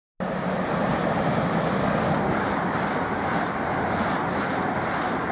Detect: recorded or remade recorded